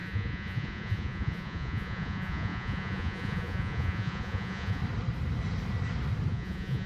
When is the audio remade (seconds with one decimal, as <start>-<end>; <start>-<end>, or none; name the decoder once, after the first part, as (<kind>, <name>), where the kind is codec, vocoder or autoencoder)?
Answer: 0.0-4.8 (vocoder, Vocos); 6.3-6.9